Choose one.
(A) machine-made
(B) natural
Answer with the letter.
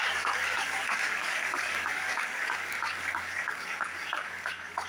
A